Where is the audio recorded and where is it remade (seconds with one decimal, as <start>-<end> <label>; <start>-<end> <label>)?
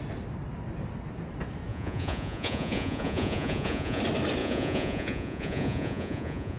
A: 0.0-1.7 recorded; 1.7-4.0 remade; 4.0-4.4 recorded; 4.4-6.6 remade